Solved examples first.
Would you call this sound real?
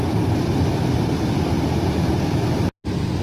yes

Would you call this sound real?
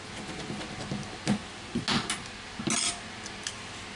yes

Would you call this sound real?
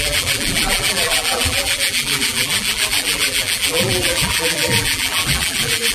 no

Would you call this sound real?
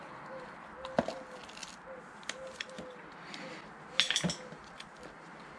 yes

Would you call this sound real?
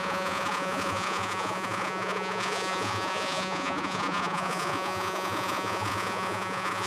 no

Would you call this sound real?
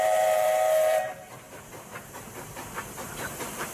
no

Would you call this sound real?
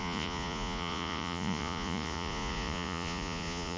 no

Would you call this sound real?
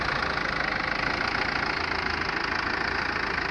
yes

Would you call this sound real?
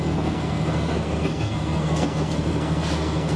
no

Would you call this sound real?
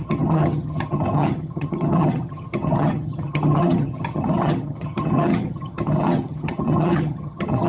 no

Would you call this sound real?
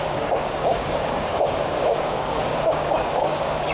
no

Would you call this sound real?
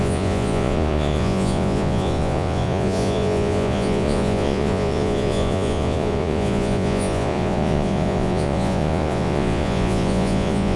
no